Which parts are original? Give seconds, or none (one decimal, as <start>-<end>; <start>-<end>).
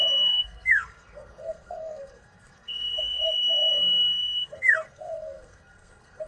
none